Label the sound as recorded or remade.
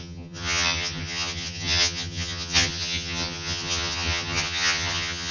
remade